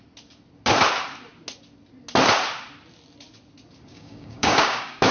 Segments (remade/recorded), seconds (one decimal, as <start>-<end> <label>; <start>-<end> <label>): 0.0-3.9 recorded; 3.9-5.1 remade